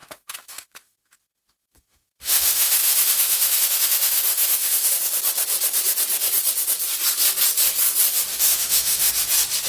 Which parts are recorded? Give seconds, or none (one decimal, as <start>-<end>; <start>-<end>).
4.9-8.3; 9.1-9.7